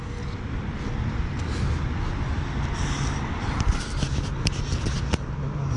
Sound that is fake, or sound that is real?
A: real